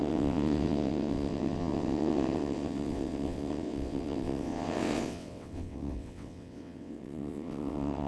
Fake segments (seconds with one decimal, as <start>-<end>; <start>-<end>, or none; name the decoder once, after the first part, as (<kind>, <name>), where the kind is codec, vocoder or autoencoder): 0.0-8.1 (vocoder, WaveNeXt)

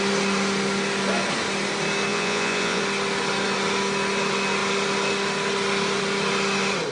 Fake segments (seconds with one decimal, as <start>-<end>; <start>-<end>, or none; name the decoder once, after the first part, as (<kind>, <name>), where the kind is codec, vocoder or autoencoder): 2.1-2.8 (vocoder, Vocos)

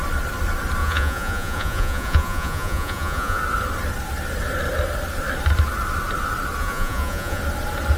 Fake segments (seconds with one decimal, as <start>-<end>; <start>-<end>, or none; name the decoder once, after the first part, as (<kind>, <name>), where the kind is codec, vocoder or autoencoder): 0.8-3.4 (vocoder, Vocos); 6.6-7.4